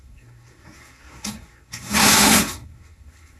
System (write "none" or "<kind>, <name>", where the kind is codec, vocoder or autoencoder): codec, SNAC